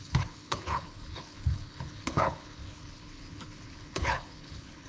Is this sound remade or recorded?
remade